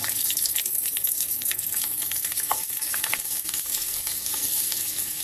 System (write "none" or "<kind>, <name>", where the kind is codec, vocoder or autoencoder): codec, SNAC